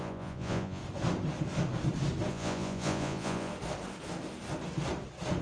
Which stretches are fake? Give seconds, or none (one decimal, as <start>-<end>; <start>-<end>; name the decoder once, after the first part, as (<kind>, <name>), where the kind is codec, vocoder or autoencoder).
0.0-0.8 (vocoder, Vocos); 2.3-3.5